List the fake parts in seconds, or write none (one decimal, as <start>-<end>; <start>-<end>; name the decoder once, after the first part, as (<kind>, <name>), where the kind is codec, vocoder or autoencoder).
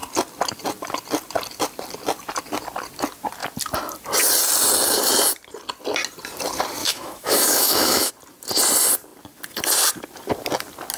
6.8-8.1 (autoencoder, DAC-VAE)